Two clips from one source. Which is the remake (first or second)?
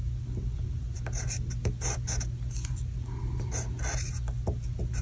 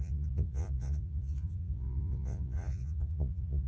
second